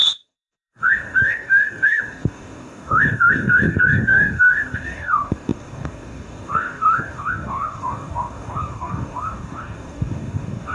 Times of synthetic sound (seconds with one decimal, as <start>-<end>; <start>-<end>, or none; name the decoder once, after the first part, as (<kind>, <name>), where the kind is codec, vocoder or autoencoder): 0.0-10.7 (codec, DAC)